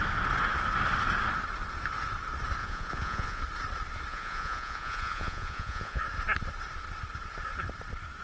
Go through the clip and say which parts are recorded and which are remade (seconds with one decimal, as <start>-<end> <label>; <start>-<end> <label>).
0.0-2.6 recorded; 2.6-3.4 remade; 3.4-4.1 recorded; 4.1-6.0 remade; 6.0-8.2 recorded